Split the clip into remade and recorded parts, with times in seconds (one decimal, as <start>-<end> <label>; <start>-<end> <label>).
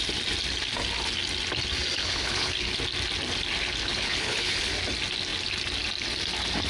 0.0-2.0 recorded; 2.0-2.7 remade; 2.7-3.9 recorded; 3.9-4.7 remade; 4.7-6.7 recorded